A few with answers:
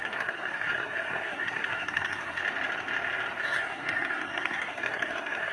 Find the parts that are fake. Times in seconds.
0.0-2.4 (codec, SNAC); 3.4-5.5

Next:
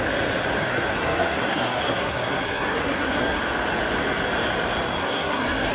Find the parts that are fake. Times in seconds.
0.6-3.4 (codec, SNAC); 5.0-5.7

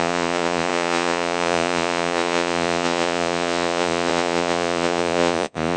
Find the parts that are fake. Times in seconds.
0.0-5.8 (vocoder, Vocos)